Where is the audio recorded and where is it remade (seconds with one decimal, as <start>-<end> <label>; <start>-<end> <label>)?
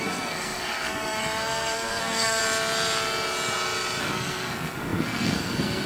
0.0-2.4 remade; 2.4-4.0 recorded; 4.0-5.9 remade